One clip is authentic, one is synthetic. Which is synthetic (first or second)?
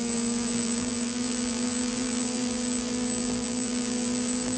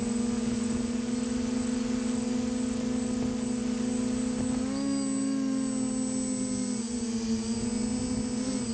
first